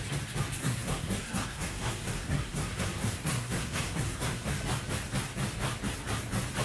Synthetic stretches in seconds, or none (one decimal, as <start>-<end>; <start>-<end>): 0.6-4.5